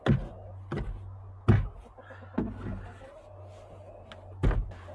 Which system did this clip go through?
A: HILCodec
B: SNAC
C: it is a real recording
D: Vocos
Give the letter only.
C